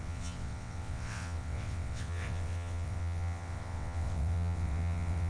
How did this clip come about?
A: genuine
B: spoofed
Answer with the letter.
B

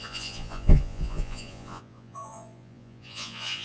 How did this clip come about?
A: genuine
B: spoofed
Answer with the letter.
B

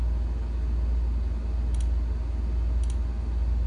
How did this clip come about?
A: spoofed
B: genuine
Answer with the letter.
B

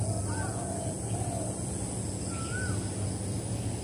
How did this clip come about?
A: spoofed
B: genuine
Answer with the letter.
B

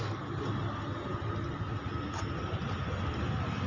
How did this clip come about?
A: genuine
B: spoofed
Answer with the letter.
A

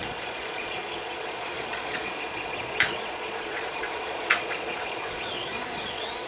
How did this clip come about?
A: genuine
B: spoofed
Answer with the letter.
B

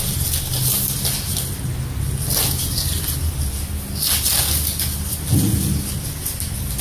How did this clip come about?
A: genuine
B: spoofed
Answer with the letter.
A